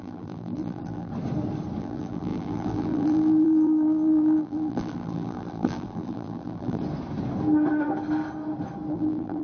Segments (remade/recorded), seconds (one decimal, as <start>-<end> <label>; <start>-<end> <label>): 0.0-1.1 remade; 1.1-1.8 recorded; 1.8-6.8 remade; 6.8-8.9 recorded; 8.9-9.4 remade